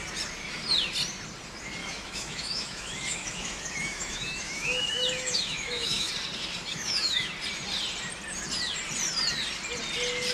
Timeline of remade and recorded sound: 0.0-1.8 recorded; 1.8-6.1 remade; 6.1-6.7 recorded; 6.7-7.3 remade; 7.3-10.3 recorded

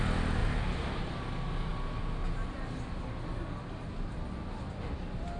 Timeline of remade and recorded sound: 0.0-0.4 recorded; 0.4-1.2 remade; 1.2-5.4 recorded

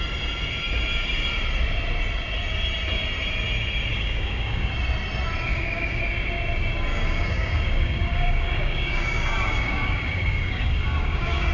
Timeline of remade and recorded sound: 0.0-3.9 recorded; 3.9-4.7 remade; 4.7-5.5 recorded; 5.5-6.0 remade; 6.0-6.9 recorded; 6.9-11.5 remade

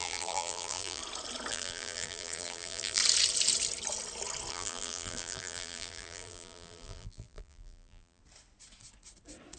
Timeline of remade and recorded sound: 0.0-1.0 remade; 1.0-1.5 recorded; 1.5-3.0 remade; 3.0-4.5 recorded; 4.5-8.2 remade; 8.2-9.6 recorded